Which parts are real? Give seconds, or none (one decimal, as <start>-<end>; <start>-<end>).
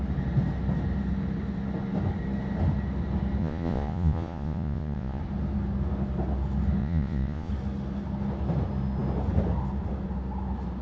0.0-3.4; 5.2-6.8; 7.5-10.8